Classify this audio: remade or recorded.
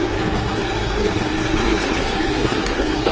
remade